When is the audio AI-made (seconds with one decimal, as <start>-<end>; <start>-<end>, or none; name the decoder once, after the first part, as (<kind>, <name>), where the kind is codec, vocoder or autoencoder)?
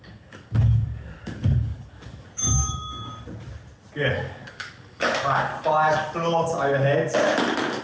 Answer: 0.0-3.1 (codec, DAC); 4.1-5.5